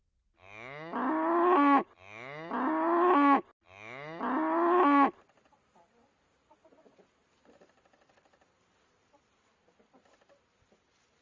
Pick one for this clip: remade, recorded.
recorded